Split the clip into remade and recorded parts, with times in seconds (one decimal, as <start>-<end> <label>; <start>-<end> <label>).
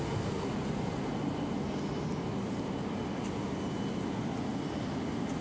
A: 0.0-5.4 recorded